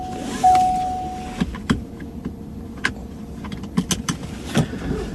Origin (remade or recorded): recorded